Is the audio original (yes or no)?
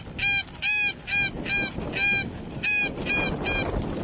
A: yes